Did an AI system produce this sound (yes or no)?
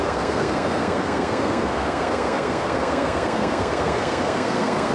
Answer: yes